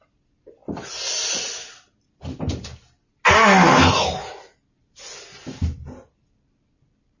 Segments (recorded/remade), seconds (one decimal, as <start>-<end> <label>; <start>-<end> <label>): 0.0-7.2 recorded